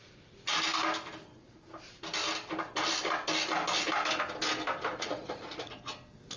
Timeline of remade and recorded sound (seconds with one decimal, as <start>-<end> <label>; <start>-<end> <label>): 0.0-4.9 recorded; 4.9-5.8 remade; 5.8-6.4 recorded